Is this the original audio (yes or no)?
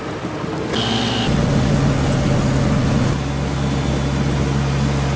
yes